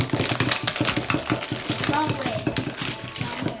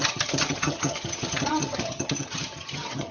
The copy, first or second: second